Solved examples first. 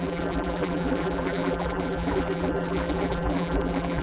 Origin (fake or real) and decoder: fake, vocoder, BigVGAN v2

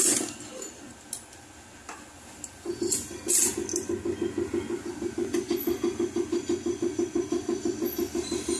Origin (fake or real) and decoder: real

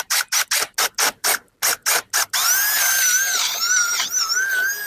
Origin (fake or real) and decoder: real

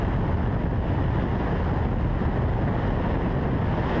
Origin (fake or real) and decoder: real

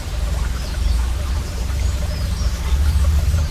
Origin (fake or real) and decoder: fake, vocoder, BigVGAN v2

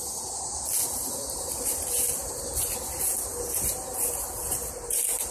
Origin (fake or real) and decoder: real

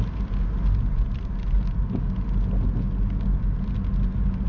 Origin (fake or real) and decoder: real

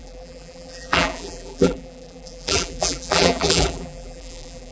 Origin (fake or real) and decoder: fake, vocoder, BigVGAN v2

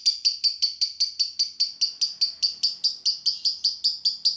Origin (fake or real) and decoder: real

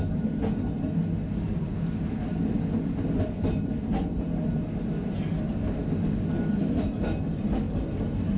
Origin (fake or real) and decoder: real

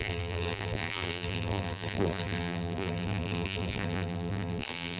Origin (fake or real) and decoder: fake, vocoder, BigVGAN v2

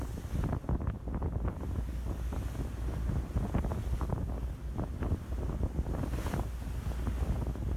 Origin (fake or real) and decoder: real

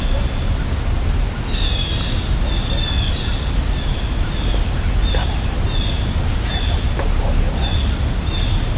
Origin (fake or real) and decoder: real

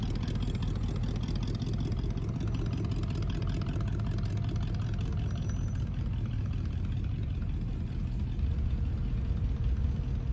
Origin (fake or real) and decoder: real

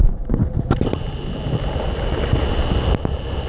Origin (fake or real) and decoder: fake, vocoder, BigVGAN v2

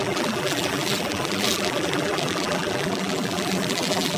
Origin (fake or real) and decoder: fake, vocoder, BigVGAN v2